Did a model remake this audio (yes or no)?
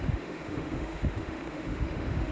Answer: yes